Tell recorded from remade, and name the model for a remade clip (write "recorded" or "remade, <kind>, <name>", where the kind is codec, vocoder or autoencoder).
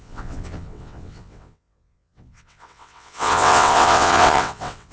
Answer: remade, vocoder, WaveNeXt